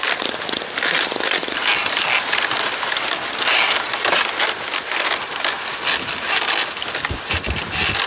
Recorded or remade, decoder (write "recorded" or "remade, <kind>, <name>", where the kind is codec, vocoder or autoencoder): recorded